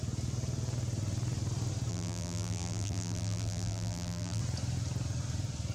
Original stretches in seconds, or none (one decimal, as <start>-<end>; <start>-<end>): 0.0-1.9; 4.4-5.7